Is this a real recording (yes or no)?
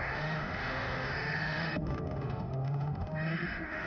no